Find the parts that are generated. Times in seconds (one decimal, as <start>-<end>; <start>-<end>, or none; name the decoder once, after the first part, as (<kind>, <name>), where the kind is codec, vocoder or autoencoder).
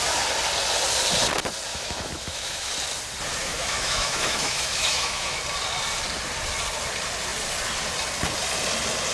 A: 1.7-2.7 (autoencoder, DAC-VAE); 3.4-5.4